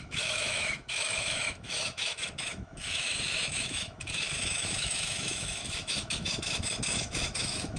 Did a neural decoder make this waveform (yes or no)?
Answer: yes